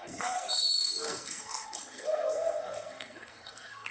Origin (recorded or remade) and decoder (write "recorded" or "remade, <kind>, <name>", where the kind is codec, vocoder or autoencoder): remade, codec, SNAC